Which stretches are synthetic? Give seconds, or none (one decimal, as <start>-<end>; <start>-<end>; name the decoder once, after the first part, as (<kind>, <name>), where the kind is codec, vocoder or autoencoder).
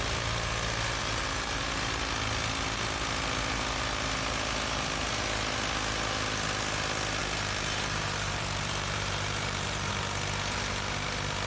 1.0-1.6 (vocoder, BigVGAN v2); 7.2-9.9